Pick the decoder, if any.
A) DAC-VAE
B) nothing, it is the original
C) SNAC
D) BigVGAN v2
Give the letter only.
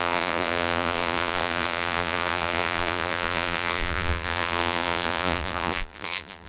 D